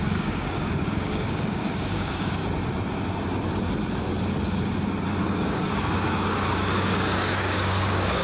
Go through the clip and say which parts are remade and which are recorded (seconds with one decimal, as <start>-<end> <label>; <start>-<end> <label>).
0.0-2.4 remade; 2.4-5.2 recorded; 5.2-8.2 remade

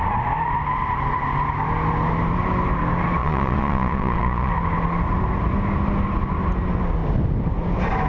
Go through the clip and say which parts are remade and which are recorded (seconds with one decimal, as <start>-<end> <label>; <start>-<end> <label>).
0.0-3.2 recorded; 3.2-4.5 remade; 4.5-8.1 recorded